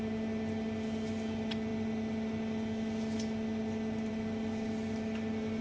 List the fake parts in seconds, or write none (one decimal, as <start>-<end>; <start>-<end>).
none